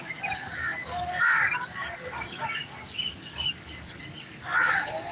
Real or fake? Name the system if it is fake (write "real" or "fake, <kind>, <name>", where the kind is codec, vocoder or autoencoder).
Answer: fake, codec, DAC